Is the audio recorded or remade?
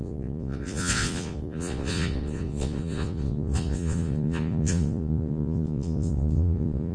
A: remade